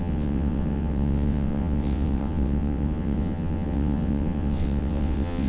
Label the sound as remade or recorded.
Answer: remade